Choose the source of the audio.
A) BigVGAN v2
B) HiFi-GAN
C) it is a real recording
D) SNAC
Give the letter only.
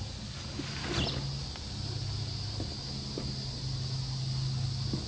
C